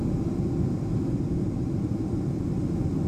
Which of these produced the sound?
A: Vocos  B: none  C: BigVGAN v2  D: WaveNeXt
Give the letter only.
B